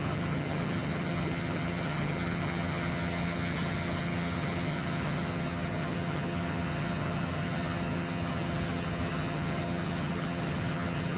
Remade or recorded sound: remade